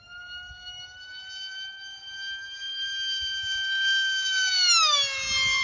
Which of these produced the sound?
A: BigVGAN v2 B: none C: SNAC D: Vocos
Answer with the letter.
B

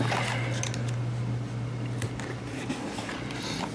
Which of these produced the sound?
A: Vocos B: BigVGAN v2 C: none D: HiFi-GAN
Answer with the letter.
C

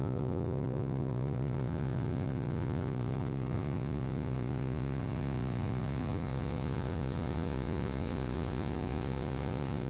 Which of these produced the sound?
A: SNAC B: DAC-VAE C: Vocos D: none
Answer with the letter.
C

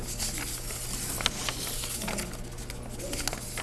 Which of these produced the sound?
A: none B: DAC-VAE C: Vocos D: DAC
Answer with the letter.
A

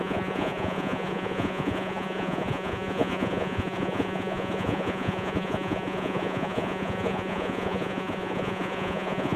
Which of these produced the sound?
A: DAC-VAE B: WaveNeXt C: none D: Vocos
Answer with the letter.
D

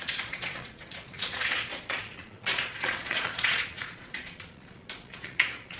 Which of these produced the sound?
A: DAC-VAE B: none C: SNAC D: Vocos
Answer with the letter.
D